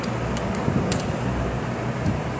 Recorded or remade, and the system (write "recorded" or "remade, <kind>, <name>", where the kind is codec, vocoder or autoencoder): recorded